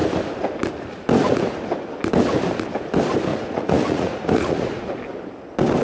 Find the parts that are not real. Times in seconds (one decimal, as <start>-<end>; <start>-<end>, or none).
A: 3.3-4.9